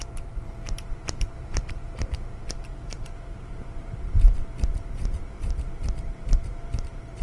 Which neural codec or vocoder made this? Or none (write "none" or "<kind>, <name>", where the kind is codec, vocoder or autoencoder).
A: vocoder, BigVGAN v2